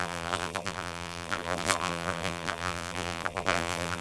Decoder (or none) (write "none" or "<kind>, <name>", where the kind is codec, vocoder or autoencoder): vocoder, BigVGAN v2